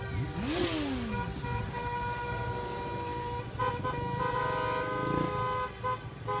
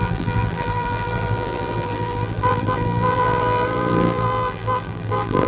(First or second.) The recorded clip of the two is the first